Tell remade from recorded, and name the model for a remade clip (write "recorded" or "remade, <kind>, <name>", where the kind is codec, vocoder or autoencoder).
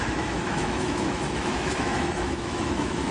remade, autoencoder, DAC-VAE